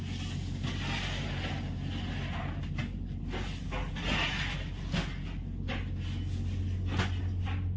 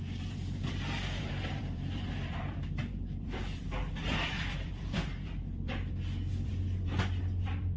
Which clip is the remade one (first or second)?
second